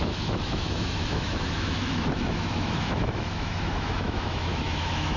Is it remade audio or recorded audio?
remade